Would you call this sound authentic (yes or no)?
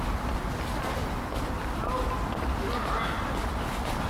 yes